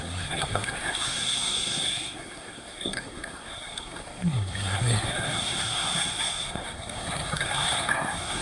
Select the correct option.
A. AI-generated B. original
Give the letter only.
A